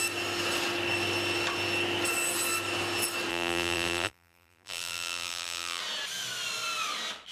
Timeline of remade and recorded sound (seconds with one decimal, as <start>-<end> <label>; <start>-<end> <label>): 0.0-3.3 recorded; 3.3-5.8 remade; 5.8-7.3 recorded